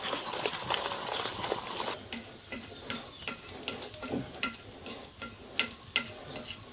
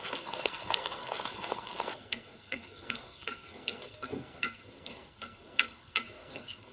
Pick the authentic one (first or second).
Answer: first